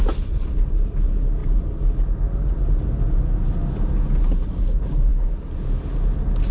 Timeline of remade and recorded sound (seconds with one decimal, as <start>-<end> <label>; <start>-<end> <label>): 0.0-6.5 recorded